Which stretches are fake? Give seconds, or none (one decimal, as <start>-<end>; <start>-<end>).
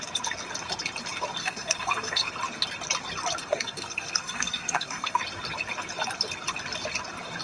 1.4-2.3; 3.4-5.2